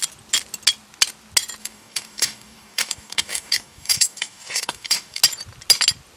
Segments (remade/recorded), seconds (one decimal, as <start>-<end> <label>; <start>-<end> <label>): 0.0-1.6 recorded; 1.6-5.2 remade; 5.2-6.2 recorded